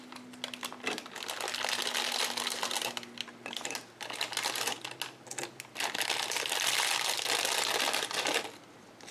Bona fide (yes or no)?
yes